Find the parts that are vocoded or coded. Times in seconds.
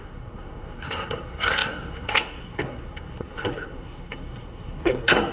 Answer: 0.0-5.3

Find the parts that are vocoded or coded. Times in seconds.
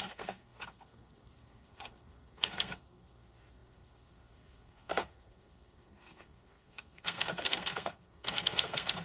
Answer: 0.0-9.0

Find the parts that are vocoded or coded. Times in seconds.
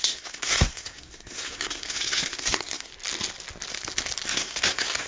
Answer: 0.0-2.9; 4.3-5.1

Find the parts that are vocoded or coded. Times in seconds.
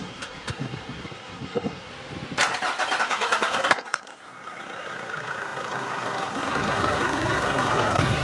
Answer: 0.0-1.9; 3.0-8.2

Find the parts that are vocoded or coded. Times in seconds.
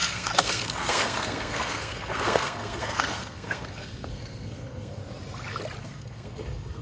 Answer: 0.0-5.0; 5.8-6.8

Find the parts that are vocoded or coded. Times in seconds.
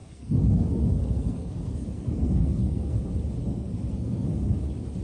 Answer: 0.0-3.0; 3.4-4.6